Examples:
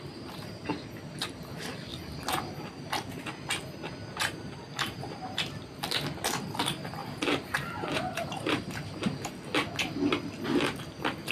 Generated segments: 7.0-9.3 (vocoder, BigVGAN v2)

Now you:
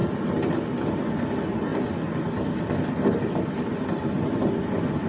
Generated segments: 0.9-1.7 (vocoder, BigVGAN v2); 4.3-5.1